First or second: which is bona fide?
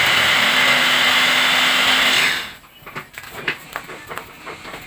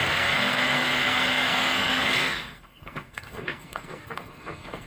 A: first